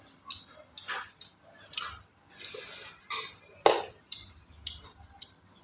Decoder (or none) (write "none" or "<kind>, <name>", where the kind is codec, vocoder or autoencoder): none